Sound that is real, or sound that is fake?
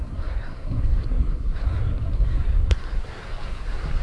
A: fake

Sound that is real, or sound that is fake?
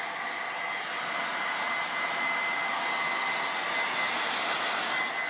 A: real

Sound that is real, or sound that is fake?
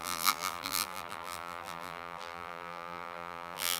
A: fake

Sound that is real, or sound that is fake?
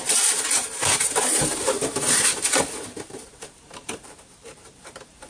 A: fake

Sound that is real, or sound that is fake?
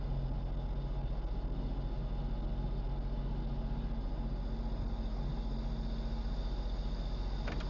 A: real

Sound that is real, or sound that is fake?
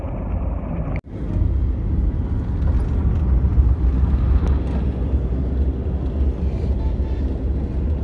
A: real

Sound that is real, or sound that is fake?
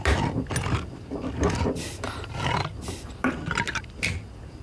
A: real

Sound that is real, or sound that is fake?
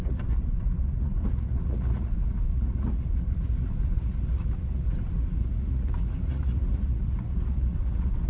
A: fake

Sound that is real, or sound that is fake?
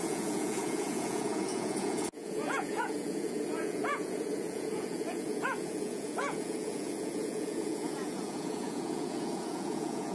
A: fake